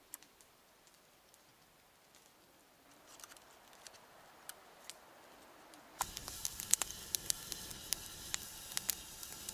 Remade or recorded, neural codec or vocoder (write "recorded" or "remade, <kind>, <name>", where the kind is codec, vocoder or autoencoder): recorded